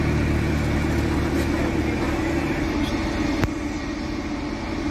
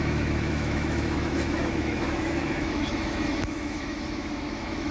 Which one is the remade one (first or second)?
second